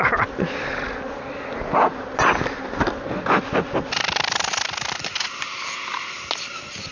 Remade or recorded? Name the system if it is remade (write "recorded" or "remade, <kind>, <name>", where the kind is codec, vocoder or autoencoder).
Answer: recorded